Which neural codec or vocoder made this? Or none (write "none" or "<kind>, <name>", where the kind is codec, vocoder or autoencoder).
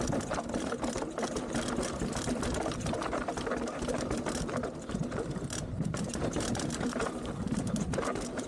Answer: vocoder, BigVGAN v2